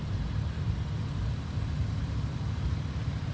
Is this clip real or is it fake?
real